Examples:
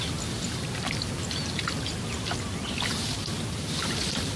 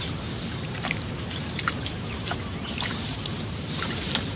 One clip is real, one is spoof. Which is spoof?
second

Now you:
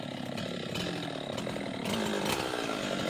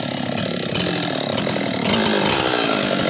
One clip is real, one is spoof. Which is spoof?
second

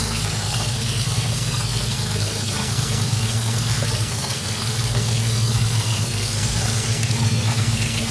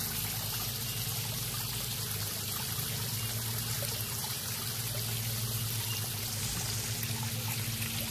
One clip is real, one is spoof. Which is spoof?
first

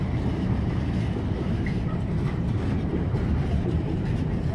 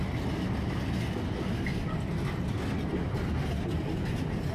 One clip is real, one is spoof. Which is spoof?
first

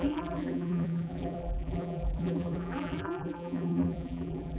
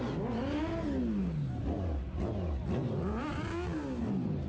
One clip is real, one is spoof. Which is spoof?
first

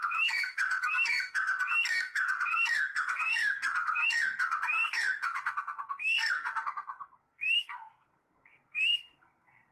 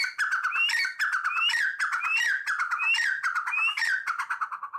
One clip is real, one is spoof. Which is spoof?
first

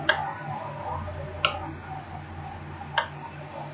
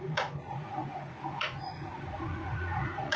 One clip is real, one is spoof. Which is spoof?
second